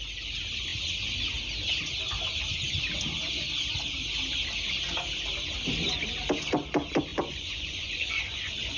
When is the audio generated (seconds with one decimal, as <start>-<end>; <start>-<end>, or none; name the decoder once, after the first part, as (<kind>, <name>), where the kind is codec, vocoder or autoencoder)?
7.1-8.8 (vocoder, Vocos)